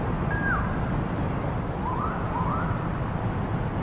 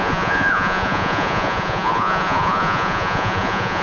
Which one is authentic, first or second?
first